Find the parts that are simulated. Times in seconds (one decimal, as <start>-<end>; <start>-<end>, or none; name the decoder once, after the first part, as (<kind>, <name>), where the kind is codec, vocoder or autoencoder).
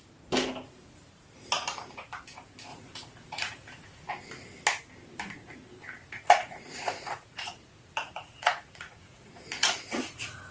2.7-4.1 (vocoder, Vocos); 6.0-10.5